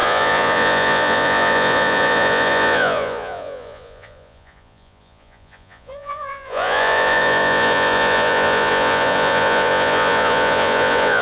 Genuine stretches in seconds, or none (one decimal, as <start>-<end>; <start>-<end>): none